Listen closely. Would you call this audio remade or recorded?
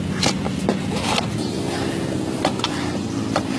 recorded